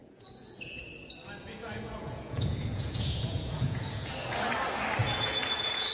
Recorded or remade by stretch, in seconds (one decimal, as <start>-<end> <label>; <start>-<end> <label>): 0.0-0.8 remade; 0.8-1.4 recorded; 1.4-4.1 remade; 4.1-5.0 recorded; 5.0-5.9 remade